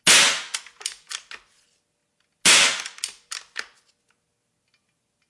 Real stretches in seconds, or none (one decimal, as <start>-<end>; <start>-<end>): 0.0-5.3